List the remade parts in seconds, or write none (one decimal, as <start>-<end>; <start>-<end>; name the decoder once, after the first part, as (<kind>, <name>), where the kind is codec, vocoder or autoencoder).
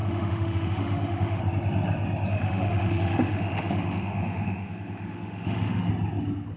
0.0-1.4 (autoencoder, DAC-VAE); 2.3-5.9